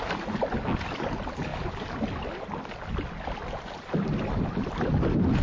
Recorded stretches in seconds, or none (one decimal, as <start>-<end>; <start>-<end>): 0.0-5.4